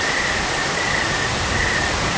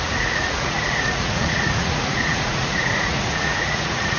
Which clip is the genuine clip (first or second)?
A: first